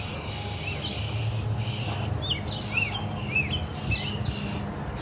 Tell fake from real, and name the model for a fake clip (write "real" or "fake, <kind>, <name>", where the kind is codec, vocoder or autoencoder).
real